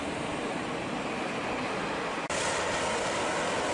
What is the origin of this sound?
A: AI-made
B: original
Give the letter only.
B